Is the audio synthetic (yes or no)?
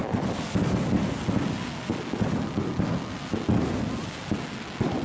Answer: no